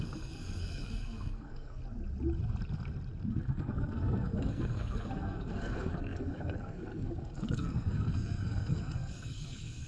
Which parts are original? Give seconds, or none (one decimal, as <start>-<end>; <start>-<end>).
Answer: 1.8-3.3